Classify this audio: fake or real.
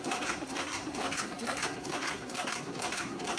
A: fake